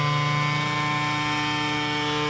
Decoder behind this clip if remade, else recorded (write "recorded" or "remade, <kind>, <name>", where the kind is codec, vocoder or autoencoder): recorded